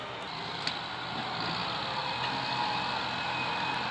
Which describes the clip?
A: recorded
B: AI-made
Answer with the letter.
A